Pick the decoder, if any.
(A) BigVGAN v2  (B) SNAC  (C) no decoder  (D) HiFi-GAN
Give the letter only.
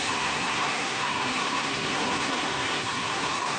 B